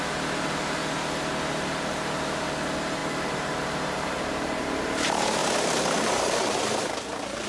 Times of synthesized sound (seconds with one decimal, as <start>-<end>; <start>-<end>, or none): 0.0-0.8; 1.5-5.4; 6.6-7.5